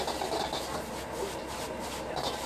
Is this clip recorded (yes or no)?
yes